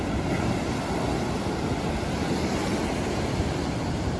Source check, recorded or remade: recorded